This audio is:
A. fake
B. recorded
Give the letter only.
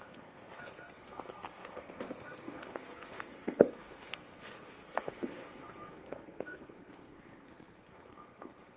A